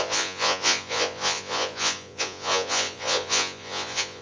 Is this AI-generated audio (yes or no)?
yes